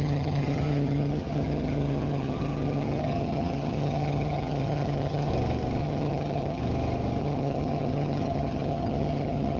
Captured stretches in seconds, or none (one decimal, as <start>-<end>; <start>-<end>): 5.3-5.8; 6.6-7.2

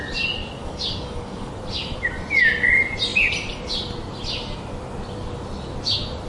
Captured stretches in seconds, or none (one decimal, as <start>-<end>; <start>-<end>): 0.0-0.6; 1.5-6.3

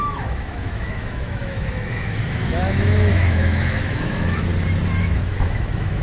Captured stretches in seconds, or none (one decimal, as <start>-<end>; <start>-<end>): 4.5-5.0

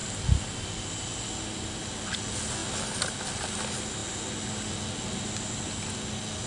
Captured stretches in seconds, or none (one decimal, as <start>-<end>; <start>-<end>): 0.0-6.5